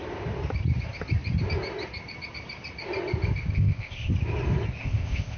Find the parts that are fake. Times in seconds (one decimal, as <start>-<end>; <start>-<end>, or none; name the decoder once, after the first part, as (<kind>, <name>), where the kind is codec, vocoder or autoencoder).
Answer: 3.5-4.1 (codec, ZipCodec); 4.8-5.4